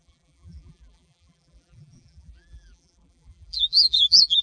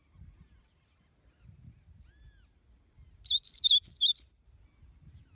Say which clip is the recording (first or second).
second